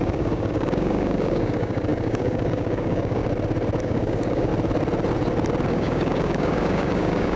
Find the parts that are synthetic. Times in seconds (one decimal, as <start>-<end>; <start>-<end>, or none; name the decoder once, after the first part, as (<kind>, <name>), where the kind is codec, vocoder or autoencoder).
0.0-3.2 (codec, DAC); 3.8-4.5; 5.7-7.4